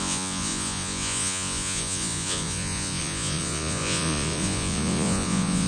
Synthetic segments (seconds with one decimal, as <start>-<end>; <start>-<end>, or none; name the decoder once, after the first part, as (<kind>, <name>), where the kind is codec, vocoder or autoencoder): 0.0-5.7 (vocoder, Vocos)